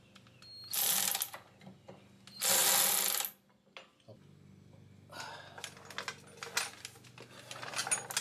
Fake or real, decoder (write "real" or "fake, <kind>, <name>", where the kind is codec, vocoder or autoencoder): real